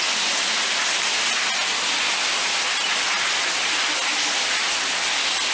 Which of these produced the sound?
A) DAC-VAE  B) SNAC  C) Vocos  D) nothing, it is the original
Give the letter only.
D